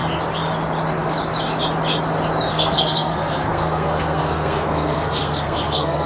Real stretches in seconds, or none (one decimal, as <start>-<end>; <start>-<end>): 0.0-2.5